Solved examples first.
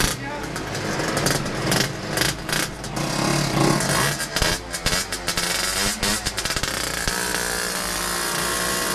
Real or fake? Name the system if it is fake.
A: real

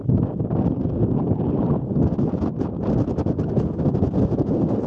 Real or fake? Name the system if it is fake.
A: real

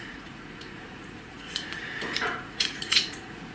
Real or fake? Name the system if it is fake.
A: fake, vocoder, Vocos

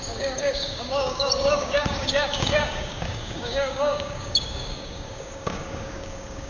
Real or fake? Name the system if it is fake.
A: fake, codec, DAC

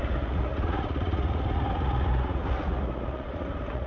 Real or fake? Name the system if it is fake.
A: fake, vocoder, Vocos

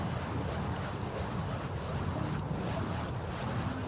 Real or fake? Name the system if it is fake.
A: real